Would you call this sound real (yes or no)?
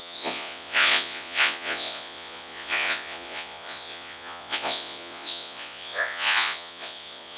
no